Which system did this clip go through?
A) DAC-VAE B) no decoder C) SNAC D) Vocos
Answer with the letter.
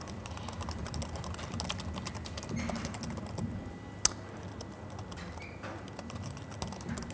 B